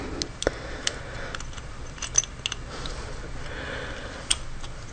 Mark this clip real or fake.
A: real